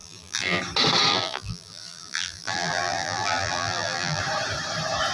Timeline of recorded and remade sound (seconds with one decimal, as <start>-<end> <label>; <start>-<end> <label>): 0.0-0.6 remade; 0.6-1.1 recorded; 1.1-4.2 remade; 4.2-5.1 recorded